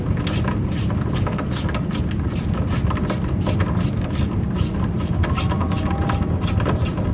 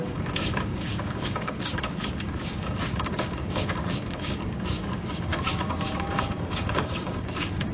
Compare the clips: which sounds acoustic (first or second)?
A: first